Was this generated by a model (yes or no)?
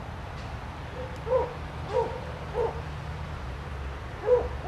yes